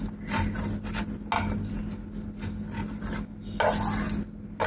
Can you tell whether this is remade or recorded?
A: recorded